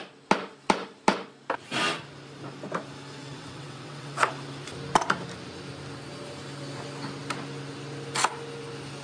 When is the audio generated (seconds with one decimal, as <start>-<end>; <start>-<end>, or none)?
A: 3.2-4.3